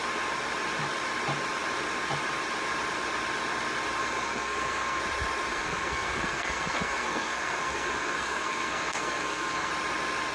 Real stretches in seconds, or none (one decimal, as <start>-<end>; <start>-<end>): 0.0-4.0; 5.0-5.5; 9.7-10.3